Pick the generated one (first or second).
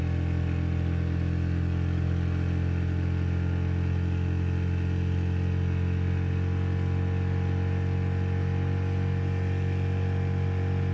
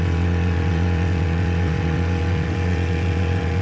second